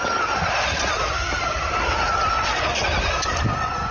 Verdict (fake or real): real